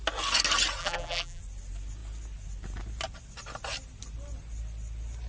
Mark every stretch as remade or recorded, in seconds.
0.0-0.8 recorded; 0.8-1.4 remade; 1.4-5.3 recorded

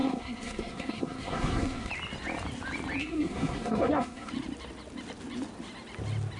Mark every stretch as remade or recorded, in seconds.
0.0-1.9 remade; 1.9-3.0 recorded; 3.0-4.3 remade; 4.3-6.4 recorded

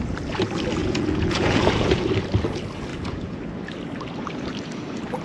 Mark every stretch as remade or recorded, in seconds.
0.0-0.8 recorded; 0.8-2.0 remade; 2.0-2.9 recorded; 2.9-3.4 remade; 3.4-5.2 recorded